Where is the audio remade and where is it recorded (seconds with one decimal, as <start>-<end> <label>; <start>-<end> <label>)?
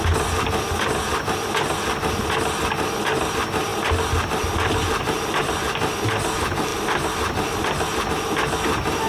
0.0-9.1 recorded